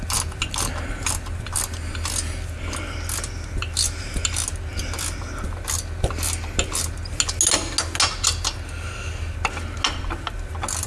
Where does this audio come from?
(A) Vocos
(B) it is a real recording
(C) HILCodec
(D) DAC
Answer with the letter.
B